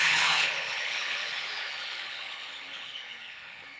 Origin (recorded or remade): remade